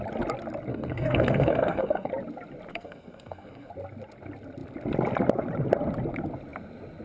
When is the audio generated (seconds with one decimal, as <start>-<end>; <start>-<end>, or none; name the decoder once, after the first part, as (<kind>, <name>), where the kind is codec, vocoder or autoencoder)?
0.7-2.1 (codec, SNAC); 2.7-3.7